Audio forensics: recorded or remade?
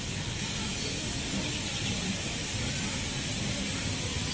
recorded